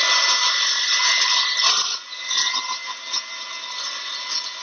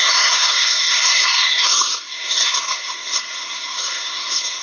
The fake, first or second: second